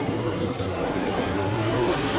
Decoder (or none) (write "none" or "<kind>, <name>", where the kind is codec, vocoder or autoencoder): codec, SNAC